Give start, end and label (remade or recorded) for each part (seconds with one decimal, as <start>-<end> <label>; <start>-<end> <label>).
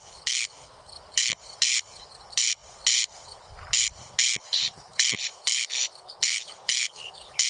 0.0-7.5 remade